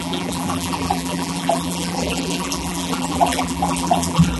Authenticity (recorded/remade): remade